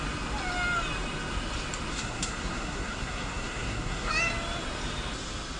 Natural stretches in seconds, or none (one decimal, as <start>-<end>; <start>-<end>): 0.0-1.9; 4.1-5.6